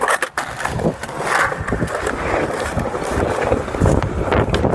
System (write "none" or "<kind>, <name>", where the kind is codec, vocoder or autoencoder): none